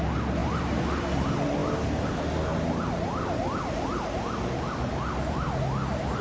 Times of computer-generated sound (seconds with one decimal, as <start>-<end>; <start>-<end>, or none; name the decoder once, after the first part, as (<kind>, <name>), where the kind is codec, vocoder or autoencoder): none